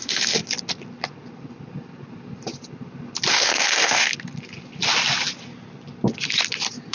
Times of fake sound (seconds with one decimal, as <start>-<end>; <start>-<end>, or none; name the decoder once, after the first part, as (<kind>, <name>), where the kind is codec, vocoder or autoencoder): 0.0-0.4 (autoencoder, DAC-VAE); 3.3-4.1